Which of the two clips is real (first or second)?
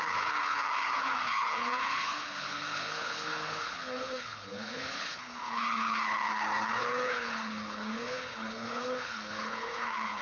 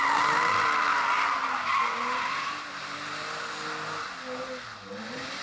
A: second